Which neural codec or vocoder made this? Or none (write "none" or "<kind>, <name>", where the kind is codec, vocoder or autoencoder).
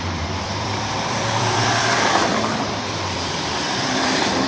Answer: vocoder, BigVGAN v2